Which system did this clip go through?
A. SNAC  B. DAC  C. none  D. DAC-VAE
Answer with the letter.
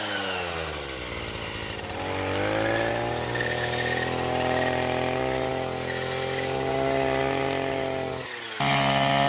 C